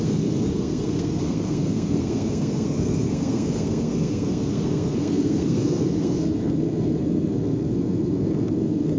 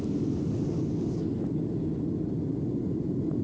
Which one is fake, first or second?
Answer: first